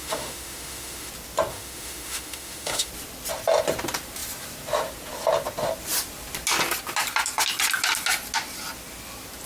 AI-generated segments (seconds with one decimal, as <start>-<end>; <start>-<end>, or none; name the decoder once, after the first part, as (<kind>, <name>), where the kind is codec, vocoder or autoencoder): 0.0-1.1 (autoencoder, DAC-VAE); 1.5-2.9